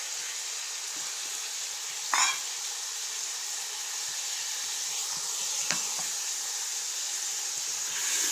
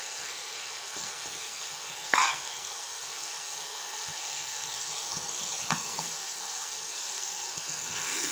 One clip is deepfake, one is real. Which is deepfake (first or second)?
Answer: second